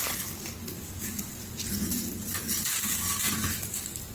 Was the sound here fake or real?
real